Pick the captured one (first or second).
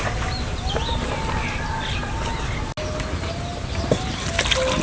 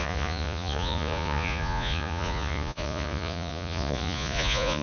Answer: first